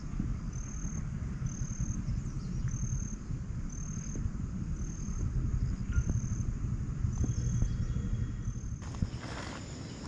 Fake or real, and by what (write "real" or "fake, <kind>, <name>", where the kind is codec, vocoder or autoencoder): real